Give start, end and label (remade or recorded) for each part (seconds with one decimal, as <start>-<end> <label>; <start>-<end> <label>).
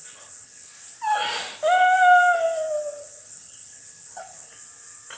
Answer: 0.0-0.7 remade; 0.7-3.0 recorded; 3.0-4.5 remade; 4.5-5.2 recorded